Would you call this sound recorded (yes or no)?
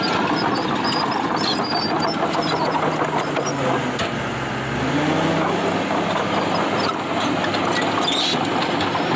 yes